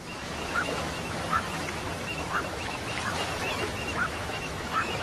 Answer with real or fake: fake